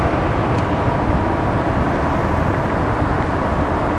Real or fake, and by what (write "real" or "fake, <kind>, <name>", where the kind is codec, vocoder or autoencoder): real